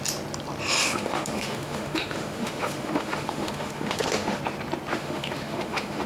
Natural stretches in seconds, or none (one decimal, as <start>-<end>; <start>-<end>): 0.0-0.8; 4.4-4.9